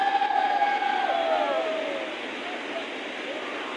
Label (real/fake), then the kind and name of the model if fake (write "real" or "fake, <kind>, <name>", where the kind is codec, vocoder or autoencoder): real